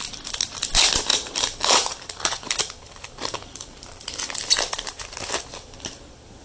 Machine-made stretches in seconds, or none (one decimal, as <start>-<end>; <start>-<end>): 1.1-4.9